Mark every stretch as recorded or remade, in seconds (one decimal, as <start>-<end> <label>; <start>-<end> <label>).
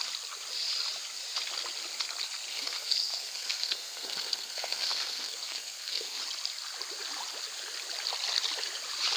0.0-2.5 recorded; 2.5-6.2 remade; 6.2-9.2 recorded